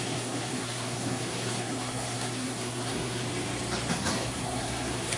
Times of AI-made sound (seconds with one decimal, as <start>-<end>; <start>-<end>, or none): 0.0-3.2; 3.9-5.2

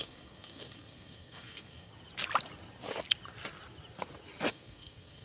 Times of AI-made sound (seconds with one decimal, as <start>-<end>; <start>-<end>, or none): 0.0-1.9; 4.5-5.2

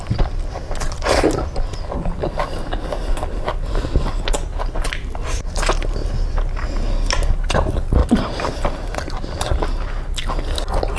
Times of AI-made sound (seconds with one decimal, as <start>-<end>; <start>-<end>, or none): none

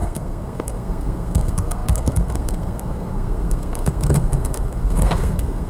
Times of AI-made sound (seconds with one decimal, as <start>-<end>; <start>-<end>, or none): 0.0-5.7

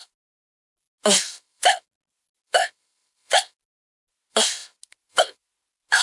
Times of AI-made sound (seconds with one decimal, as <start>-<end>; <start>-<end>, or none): none